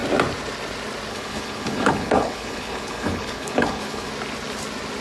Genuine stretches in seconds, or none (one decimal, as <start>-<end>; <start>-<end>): 0.0-1.1; 4.1-5.0